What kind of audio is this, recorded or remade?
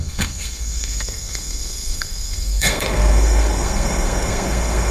remade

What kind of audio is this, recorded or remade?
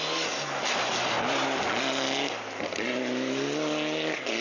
recorded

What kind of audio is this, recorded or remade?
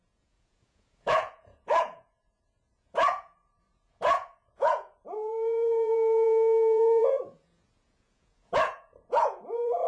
remade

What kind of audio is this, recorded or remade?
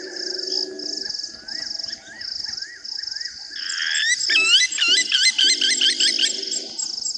recorded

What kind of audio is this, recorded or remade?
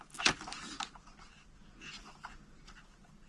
recorded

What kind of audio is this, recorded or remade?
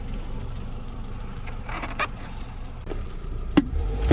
remade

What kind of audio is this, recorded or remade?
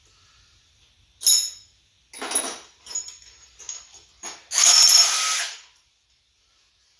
recorded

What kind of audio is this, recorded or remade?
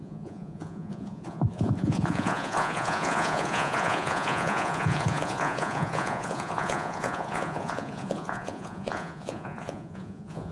remade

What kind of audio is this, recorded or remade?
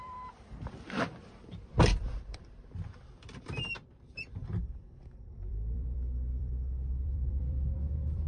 remade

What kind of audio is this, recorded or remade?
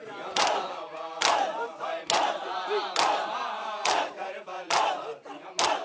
recorded